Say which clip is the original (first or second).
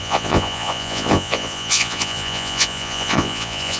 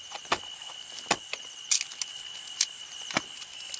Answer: second